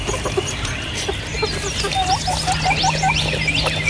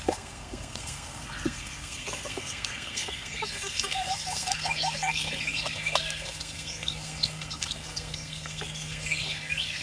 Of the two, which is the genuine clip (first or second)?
first